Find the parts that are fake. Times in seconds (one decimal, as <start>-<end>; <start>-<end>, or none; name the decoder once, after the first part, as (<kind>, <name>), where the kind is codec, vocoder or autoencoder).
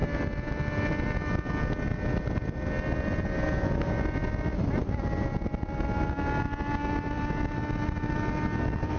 none